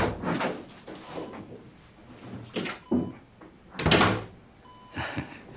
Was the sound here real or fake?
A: real